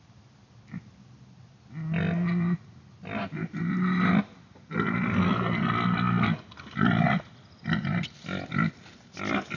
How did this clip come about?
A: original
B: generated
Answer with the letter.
A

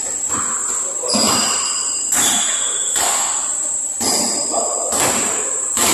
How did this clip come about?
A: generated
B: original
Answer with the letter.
A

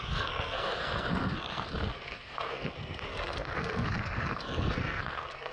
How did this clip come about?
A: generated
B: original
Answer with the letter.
A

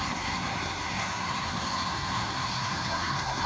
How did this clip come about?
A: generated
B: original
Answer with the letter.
A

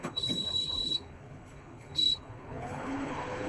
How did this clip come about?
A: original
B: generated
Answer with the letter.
B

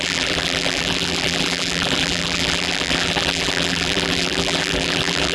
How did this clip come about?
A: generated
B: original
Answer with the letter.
A